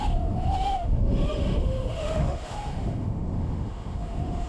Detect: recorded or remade remade